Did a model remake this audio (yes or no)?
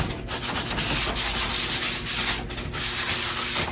no